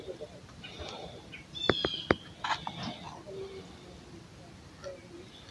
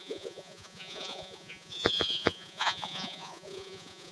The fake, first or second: second